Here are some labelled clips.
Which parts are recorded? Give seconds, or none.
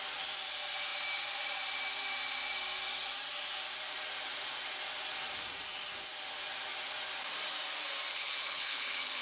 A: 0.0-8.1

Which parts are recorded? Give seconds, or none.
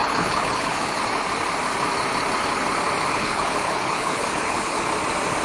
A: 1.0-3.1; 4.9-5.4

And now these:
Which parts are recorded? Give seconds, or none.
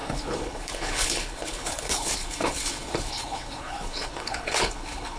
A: none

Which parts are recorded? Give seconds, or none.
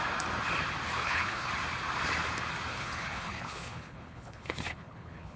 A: 0.0-1.0; 1.5-2.7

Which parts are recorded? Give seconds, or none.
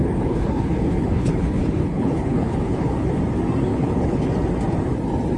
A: 3.2-3.7; 4.3-5.4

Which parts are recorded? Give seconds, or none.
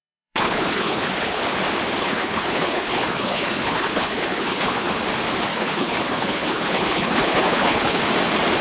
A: 1.4-2.0; 5.0-5.5; 8.0-8.6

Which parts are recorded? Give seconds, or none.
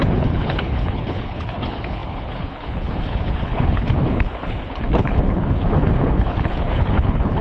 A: none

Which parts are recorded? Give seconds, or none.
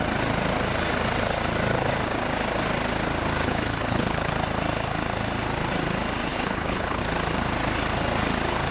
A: 0.0-3.4; 4.3-6.3; 7.0-8.7